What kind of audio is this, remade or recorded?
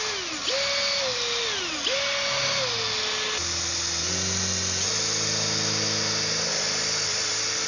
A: recorded